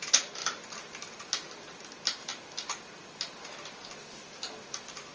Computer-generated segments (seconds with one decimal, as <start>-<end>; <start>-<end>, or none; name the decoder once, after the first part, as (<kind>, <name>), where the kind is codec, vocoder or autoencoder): none